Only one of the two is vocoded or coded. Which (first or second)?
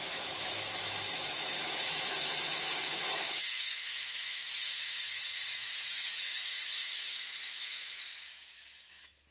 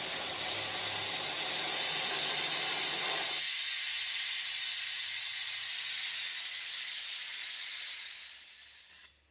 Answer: first